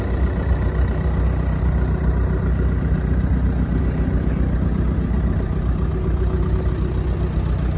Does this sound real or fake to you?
real